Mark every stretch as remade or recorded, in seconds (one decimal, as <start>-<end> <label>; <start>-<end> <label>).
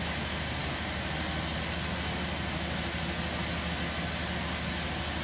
0.0-5.2 recorded